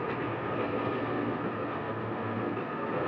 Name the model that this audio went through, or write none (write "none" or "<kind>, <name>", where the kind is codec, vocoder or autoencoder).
codec, SNAC